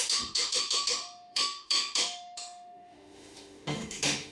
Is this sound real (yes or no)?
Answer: no